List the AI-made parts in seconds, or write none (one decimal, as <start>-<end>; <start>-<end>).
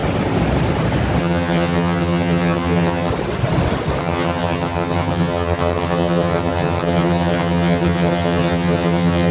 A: 1.2-3.1; 4.0-9.3